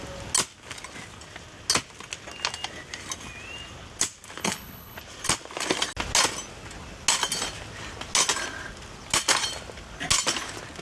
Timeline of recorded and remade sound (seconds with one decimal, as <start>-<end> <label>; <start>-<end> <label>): 0.0-4.4 recorded; 4.4-5.0 remade; 5.0-10.8 recorded